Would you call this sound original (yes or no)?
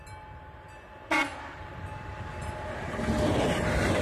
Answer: yes